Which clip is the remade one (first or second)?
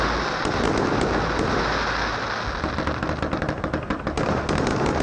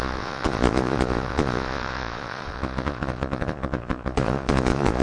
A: second